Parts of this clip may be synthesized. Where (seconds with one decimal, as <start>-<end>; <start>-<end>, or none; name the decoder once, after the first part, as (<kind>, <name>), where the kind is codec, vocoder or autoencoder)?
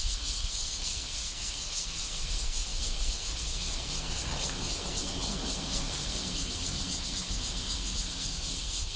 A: 0.0-9.0 (codec, SNAC)